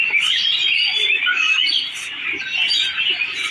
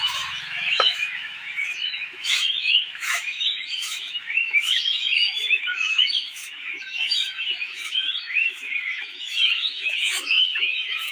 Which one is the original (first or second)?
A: first